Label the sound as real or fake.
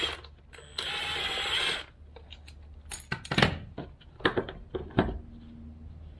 real